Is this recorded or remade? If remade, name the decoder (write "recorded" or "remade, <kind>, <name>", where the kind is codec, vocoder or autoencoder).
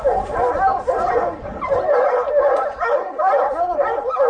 recorded